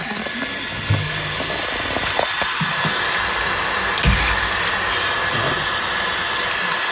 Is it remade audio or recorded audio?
recorded